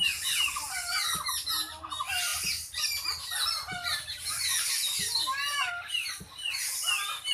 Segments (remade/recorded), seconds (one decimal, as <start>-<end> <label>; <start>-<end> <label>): 0.0-7.3 recorded